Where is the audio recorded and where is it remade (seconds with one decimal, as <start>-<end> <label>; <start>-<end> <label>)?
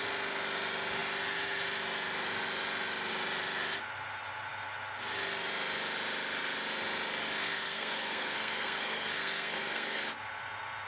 0.0-7.4 recorded; 7.4-10.0 remade; 10.0-10.9 recorded